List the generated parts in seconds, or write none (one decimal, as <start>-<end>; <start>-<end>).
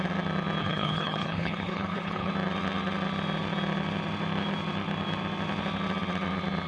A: 0.6-2.3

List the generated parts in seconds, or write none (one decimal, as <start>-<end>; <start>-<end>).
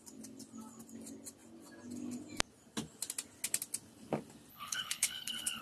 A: 4.5-5.6